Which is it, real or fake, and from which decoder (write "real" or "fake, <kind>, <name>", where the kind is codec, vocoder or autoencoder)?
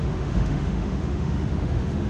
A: fake, autoencoder, DAC-VAE